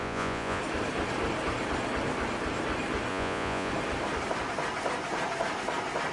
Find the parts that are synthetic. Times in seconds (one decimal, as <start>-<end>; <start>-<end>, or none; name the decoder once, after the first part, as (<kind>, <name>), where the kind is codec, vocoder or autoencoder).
0.0-0.6 (vocoder, Vocos); 3.1-3.7